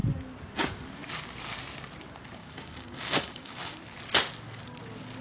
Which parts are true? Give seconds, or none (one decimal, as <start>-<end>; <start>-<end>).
0.0-2.4; 3.8-5.2